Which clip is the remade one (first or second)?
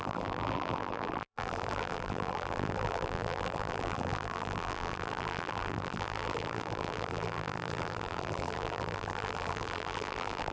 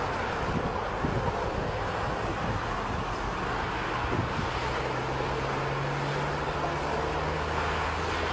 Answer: first